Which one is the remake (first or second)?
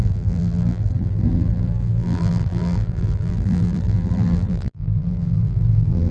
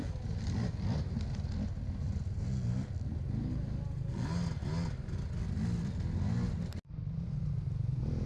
first